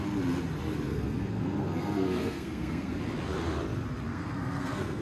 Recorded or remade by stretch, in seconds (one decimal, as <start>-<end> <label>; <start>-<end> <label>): 0.0-0.9 recorded; 0.9-3.0 remade; 3.0-4.1 recorded; 4.1-5.0 remade